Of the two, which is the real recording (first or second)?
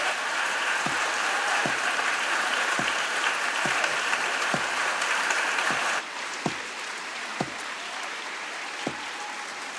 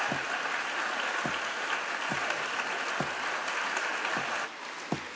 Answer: second